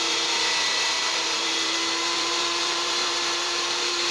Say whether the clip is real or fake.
fake